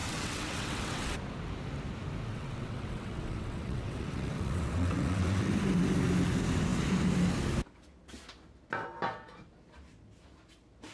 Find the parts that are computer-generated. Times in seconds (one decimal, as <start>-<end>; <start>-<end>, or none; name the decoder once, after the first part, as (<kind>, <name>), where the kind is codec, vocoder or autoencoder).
0.0-1.2 (vocoder, WaveNeXt); 2.3-5.5